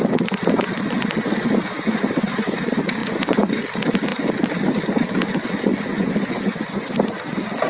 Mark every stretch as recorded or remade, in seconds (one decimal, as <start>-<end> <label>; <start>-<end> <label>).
0.0-3.0 recorded; 3.0-3.6 remade; 3.6-5.9 recorded; 5.9-6.9 remade; 6.9-7.7 recorded

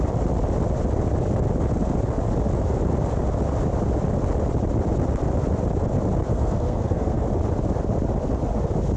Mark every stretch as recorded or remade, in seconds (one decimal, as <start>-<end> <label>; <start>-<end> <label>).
0.0-6.3 recorded; 6.3-7.2 remade; 7.2-9.0 recorded

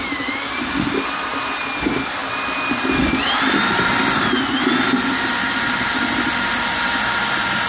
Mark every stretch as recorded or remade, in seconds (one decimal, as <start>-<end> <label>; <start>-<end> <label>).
0.0-7.7 recorded

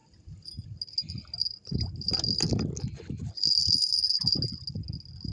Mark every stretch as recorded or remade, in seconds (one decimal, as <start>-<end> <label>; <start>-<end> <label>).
0.0-5.3 recorded